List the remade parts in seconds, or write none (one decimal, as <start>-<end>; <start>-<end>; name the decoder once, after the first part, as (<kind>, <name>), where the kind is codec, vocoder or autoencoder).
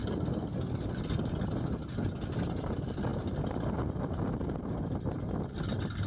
none